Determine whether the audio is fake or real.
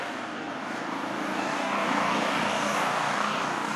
fake